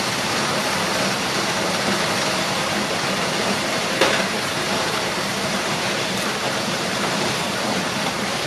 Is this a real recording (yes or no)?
no